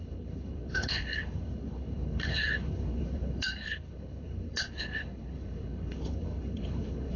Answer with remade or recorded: remade